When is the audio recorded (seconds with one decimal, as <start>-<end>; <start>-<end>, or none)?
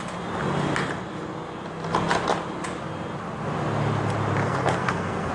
0.0-4.4